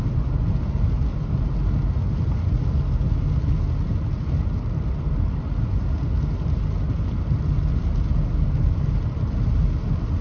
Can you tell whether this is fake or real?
real